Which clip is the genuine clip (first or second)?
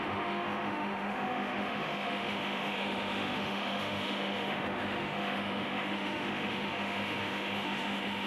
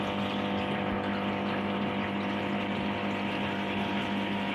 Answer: second